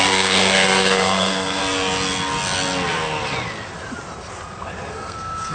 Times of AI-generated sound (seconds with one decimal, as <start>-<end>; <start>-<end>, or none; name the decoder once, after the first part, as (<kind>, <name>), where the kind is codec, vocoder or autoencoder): 0.0-1.6 (codec, SNAC); 4.9-5.5